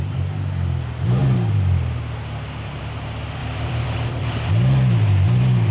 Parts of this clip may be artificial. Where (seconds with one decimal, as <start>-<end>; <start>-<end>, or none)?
3.4-4.5